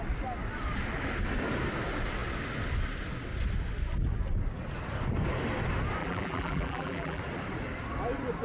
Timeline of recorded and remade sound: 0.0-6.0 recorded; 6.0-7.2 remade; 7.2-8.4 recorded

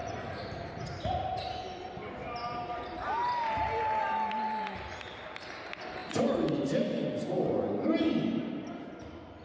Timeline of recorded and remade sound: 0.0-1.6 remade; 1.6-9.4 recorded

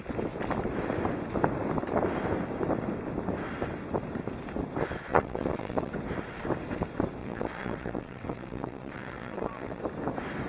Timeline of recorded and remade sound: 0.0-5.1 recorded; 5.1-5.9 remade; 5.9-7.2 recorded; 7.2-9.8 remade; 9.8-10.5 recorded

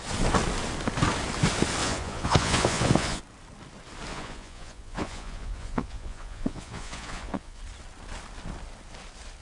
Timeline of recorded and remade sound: 0.0-1.8 recorded; 1.8-3.2 remade; 3.2-4.1 recorded; 4.1-7.6 remade; 7.6-9.4 recorded

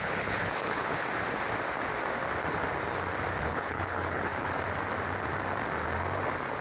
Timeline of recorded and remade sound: 0.0-0.9 remade; 0.9-3.4 recorded; 3.4-4.3 remade; 4.3-6.6 recorded